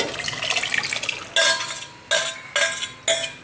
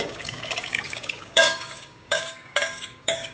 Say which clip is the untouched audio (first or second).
first